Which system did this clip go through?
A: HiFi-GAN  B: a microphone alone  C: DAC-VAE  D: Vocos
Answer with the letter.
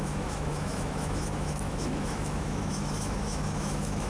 C